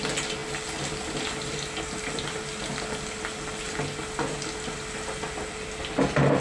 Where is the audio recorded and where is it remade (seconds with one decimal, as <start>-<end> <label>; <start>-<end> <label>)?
0.0-6.4 recorded